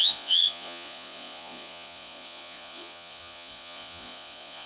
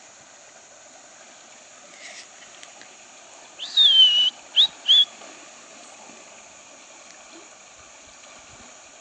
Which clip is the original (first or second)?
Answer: second